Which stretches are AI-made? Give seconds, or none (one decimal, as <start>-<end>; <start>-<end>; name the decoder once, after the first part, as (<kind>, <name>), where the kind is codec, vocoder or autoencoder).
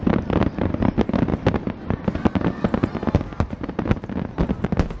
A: none